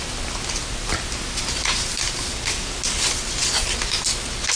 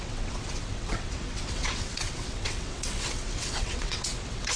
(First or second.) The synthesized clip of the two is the second